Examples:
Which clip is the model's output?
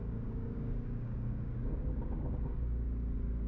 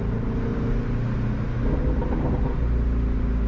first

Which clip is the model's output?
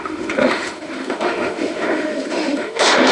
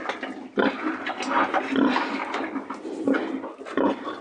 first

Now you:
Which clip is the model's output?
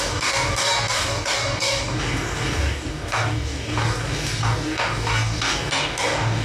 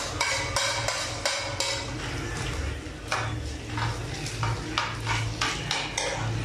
first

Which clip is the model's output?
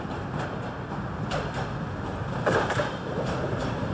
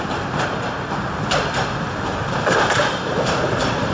second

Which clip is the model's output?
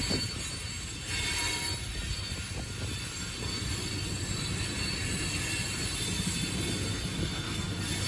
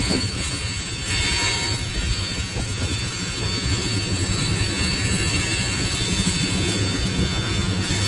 second